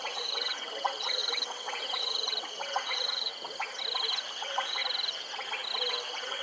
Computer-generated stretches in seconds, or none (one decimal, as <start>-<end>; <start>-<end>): 0.0-3.3; 4.3-4.8; 5.9-6.4